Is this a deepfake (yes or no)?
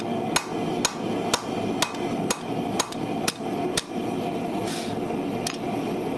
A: no